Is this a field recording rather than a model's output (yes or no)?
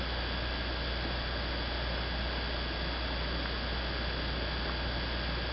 yes